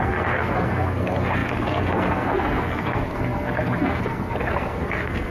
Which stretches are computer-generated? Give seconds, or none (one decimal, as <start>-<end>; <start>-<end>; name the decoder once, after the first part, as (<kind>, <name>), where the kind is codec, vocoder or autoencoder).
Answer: 0.0-5.3 (codec, SNAC)

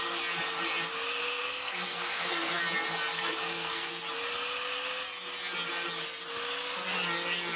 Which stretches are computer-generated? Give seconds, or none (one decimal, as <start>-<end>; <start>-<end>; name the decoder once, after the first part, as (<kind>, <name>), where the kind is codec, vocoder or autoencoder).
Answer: 1.2-2.6 (codec, SNAC); 3.1-3.9

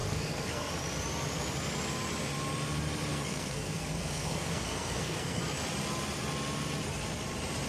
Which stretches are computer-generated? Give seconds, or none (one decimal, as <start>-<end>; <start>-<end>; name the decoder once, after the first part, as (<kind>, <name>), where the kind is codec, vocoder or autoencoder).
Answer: 0.0-0.7 (codec, SNAC); 3.1-5.4

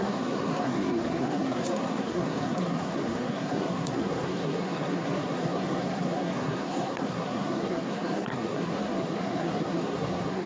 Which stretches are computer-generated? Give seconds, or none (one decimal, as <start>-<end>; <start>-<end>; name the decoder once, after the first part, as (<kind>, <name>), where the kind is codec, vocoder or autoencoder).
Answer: 0.0-10.5 (codec, SNAC)